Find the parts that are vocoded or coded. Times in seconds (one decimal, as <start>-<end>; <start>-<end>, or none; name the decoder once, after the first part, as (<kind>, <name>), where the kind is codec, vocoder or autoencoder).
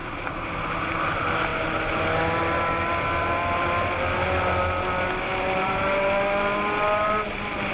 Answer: 0.0-0.8 (vocoder, BigVGAN v2); 5.3-7.2